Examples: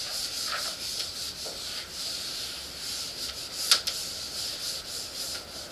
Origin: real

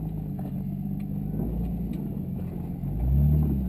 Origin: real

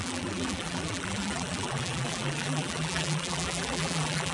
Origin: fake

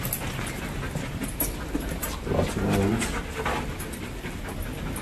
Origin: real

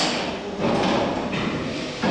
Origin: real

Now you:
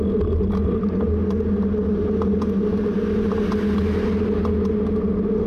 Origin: real